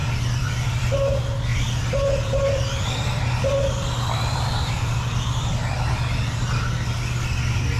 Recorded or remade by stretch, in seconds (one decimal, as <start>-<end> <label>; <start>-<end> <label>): 0.0-0.9 remade; 0.9-1.5 recorded; 1.5-6.2 remade; 6.2-7.8 recorded